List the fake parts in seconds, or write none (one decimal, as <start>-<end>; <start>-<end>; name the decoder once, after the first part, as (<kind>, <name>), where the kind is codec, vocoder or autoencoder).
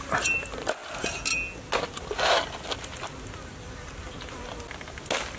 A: none